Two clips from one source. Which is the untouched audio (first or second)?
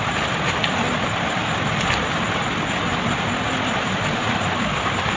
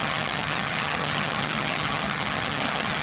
first